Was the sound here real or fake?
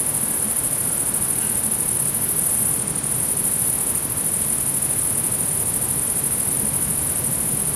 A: real